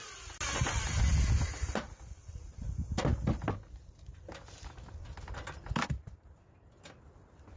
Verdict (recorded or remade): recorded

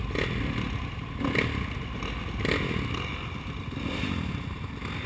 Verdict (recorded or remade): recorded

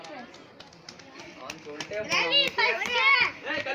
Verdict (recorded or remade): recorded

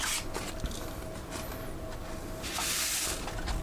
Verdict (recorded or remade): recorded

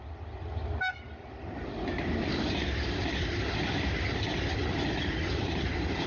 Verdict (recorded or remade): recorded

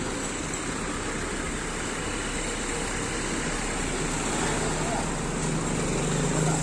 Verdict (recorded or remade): recorded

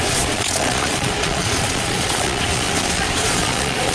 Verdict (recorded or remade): remade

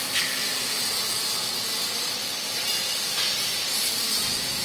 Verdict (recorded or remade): recorded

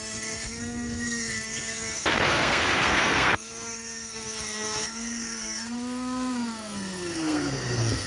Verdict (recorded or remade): remade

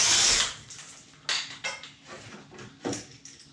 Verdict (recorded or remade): recorded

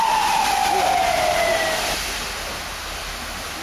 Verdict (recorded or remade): recorded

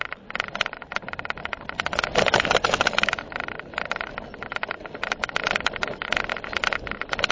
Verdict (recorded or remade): recorded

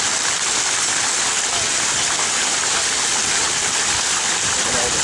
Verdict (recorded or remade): recorded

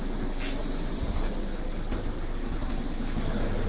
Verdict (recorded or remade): recorded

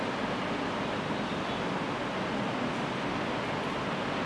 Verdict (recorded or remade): recorded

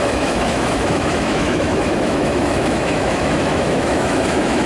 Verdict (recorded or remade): remade